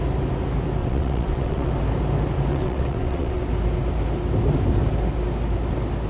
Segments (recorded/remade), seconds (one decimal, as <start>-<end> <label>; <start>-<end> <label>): 0.0-0.8 recorded; 0.8-1.7 remade; 1.7-2.5 recorded; 2.5-3.4 remade; 3.4-6.1 recorded